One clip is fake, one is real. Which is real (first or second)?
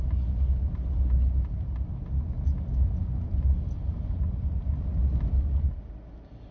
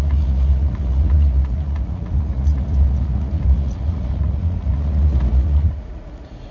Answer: first